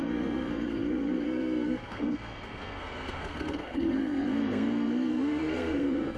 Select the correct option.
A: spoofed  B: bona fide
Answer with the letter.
A